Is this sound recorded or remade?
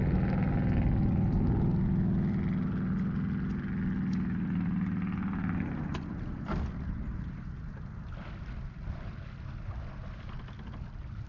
recorded